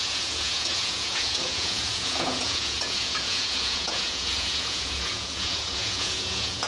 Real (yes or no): no